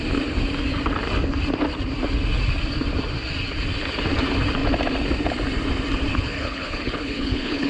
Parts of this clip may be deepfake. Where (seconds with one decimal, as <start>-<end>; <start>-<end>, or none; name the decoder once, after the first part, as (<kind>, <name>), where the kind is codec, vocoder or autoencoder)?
6.1-7.7 (codec, HILCodec)